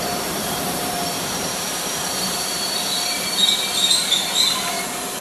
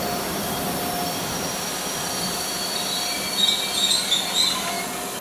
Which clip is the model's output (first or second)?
first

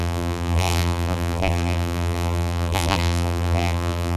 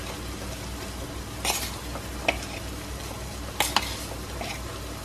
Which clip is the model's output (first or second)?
first